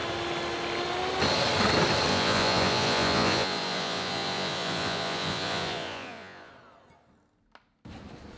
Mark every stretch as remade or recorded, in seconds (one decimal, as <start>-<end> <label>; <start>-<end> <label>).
0.0-2.1 recorded; 2.1-6.5 remade; 6.5-8.4 recorded